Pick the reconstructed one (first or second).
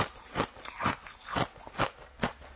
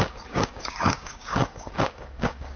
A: second